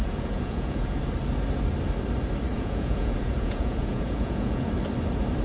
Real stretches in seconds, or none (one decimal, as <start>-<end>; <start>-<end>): 1.0-2.5; 4.7-5.4